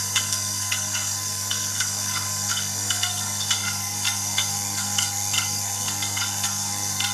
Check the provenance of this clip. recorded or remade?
remade